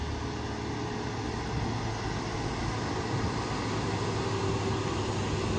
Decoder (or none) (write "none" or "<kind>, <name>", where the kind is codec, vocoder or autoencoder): none